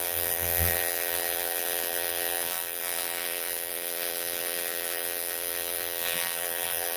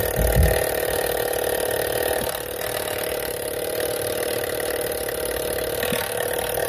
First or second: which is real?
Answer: second